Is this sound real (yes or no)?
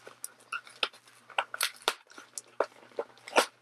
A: yes